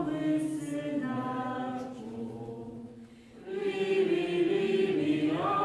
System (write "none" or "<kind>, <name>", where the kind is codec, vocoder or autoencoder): none